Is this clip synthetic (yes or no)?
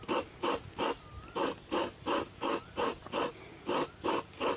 no